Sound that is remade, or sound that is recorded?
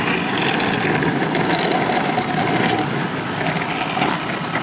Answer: recorded